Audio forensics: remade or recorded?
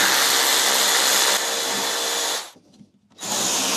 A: recorded